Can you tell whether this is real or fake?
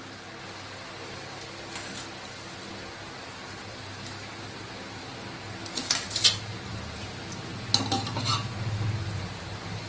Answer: real